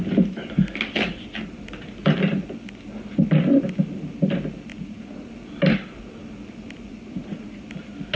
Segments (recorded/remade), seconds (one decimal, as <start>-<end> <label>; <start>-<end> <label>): 0.0-4.7 recorded; 4.7-5.3 remade; 5.3-6.9 recorded; 6.9-7.6 remade; 7.6-8.2 recorded